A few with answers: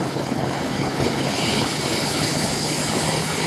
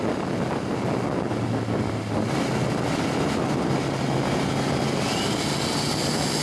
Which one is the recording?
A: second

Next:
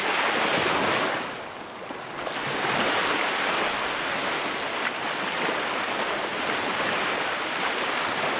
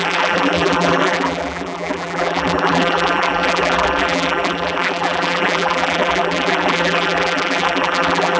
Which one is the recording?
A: first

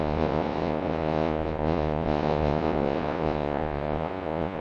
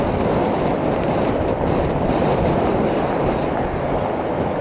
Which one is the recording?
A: second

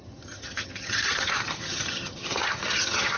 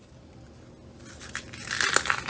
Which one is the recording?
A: second